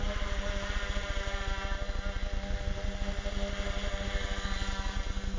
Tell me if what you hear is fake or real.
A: real